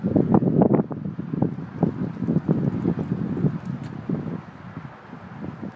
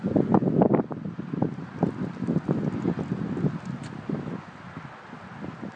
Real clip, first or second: first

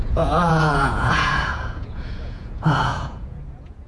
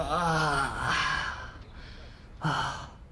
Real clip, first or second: second